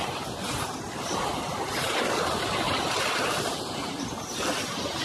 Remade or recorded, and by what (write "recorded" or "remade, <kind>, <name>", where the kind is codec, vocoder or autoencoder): recorded